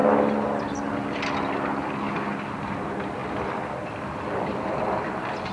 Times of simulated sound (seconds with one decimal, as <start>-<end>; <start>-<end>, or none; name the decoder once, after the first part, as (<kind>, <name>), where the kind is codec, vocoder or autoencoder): none